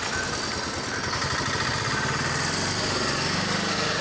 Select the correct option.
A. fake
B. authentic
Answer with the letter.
B